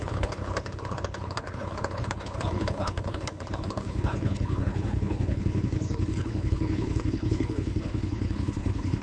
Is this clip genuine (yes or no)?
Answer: no